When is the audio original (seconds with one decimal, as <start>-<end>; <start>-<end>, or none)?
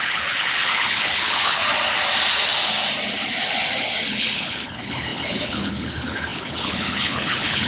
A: 1.6-4.1